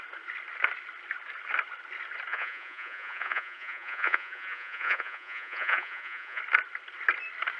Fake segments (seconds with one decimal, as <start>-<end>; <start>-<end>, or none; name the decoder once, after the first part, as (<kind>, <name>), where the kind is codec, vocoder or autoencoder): 2.3-6.4 (vocoder, Vocos)